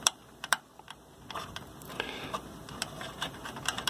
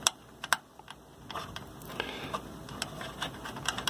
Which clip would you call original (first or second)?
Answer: second